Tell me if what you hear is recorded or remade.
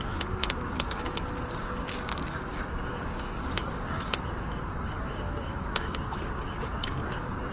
remade